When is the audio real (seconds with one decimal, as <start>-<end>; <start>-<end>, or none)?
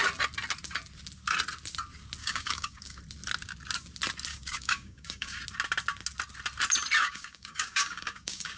0.0-2.2; 3.0-4.3; 5.4-7.0